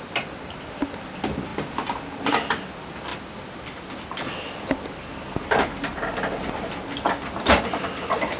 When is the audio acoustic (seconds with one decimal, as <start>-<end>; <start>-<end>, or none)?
0.0-8.4

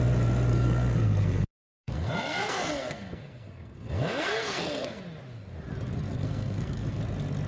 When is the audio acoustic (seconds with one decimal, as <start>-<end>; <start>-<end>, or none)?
0.0-0.5; 5.0-6.1; 7.0-7.5